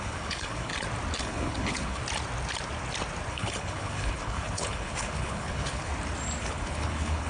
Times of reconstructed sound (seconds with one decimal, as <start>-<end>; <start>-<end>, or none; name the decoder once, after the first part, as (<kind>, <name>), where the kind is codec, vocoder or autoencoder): 0.0-0.7 (codec, HILCodec); 1.2-2.0; 3.3-5.9; 6.4-7.3